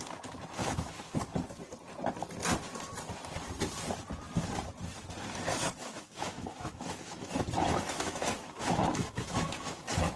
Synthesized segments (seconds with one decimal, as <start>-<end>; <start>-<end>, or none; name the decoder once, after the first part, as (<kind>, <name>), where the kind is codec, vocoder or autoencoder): 0.6-1.1 (autoencoder, DAC-VAE); 5.5-10.2